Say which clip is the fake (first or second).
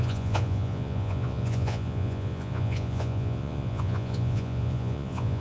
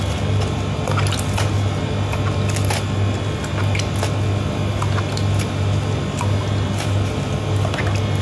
first